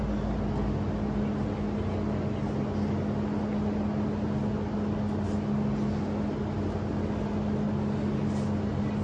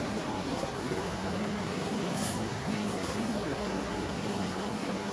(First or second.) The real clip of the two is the first